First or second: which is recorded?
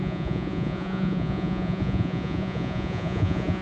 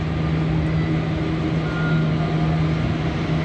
second